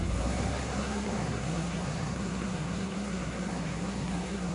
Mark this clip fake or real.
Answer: fake